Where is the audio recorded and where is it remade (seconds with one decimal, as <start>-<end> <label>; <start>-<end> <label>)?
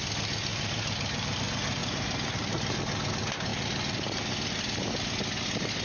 0.0-0.5 recorded; 0.5-1.4 remade; 1.4-1.8 recorded; 1.8-2.8 remade; 2.8-5.8 recorded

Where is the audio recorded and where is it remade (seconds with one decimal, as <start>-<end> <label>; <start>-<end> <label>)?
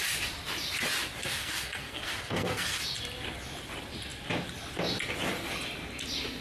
0.0-1.2 recorded; 1.2-2.8 remade; 2.8-6.4 recorded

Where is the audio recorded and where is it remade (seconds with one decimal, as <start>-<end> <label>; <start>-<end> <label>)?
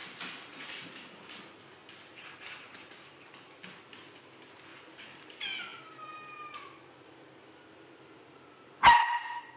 0.0-0.9 remade; 0.9-1.8 recorded; 1.8-3.9 remade; 3.9-4.7 recorded; 4.7-5.3 remade; 5.3-9.6 recorded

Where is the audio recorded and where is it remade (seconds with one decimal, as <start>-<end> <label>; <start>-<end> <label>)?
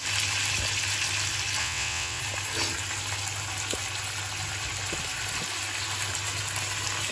0.0-1.6 recorded; 1.6-2.2 remade; 2.2-7.1 recorded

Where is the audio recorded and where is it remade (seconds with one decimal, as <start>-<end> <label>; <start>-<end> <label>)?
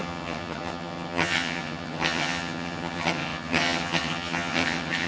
0.0-5.1 remade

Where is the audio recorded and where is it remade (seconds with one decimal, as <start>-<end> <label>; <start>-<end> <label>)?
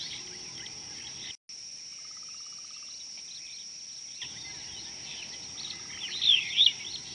0.0-7.1 recorded